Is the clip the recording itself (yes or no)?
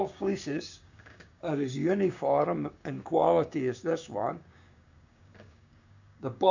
no